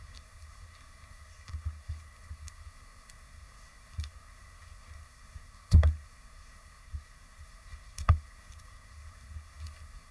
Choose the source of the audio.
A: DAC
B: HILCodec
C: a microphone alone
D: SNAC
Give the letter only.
D